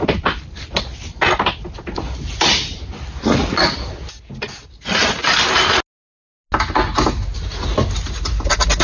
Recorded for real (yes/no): yes